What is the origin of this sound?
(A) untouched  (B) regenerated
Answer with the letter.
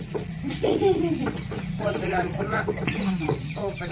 B